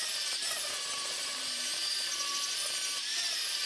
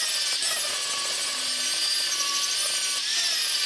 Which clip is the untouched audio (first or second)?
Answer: second